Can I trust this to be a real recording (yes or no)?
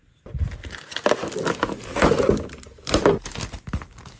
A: yes